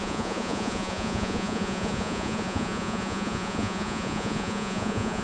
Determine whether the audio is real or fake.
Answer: fake